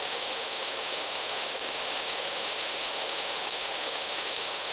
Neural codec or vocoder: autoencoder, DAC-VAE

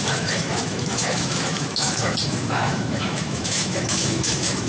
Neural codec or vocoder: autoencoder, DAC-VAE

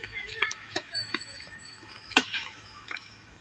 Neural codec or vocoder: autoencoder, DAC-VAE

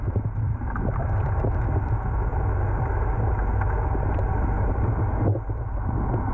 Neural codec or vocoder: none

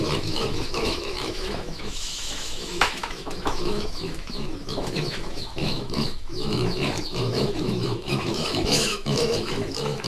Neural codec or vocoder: autoencoder, DAC-VAE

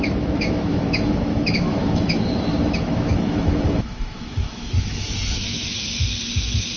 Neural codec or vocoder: autoencoder, DAC-VAE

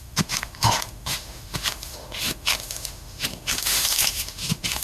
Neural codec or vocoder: autoencoder, DAC-VAE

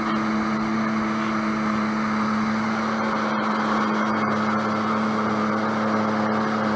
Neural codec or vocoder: none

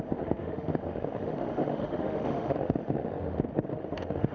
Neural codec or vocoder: autoencoder, DAC-VAE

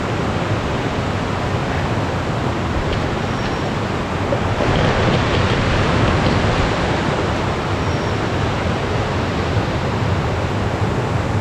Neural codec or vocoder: none